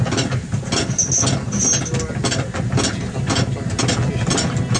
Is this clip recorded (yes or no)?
yes